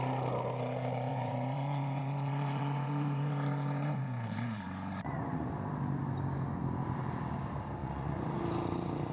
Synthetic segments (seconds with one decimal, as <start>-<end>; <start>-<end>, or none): 1.1-5.5; 7.8-8.4